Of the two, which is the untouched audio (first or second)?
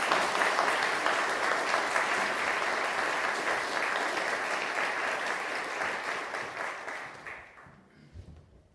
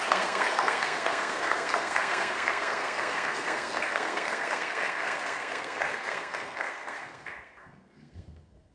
first